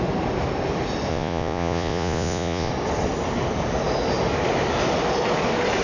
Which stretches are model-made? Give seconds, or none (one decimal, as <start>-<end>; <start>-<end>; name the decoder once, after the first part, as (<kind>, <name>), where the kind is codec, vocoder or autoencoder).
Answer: 1.1-2.7 (vocoder, Vocos)